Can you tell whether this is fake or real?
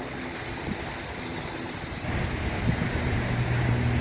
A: real